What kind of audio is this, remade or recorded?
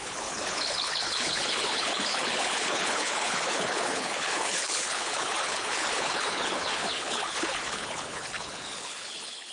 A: remade